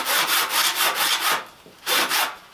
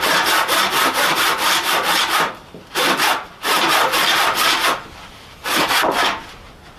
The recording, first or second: first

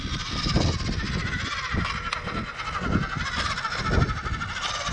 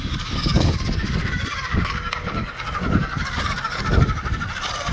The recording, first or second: first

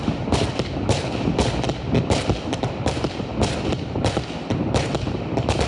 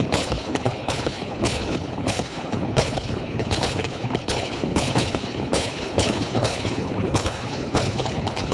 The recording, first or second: first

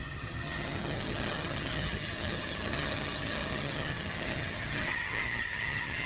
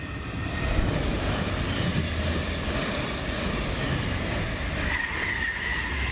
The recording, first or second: second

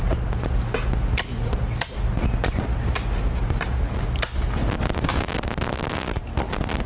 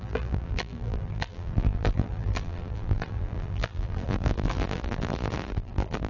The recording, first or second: first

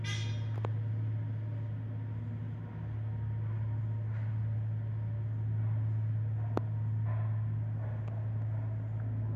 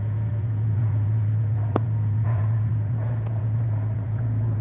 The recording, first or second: first